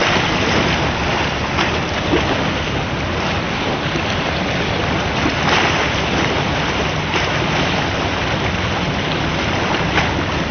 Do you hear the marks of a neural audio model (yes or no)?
no